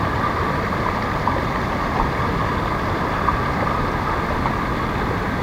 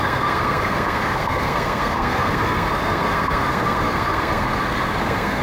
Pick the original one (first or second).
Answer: first